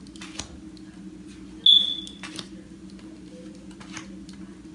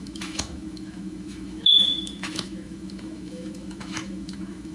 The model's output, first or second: second